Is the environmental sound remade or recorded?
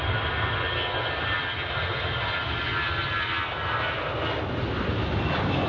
recorded